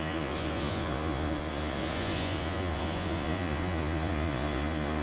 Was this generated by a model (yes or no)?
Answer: yes